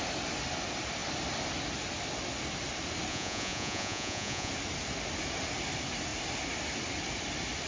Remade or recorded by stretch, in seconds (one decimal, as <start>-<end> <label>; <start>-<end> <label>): 0.0-3.1 recorded; 3.1-4.5 remade; 4.5-7.7 recorded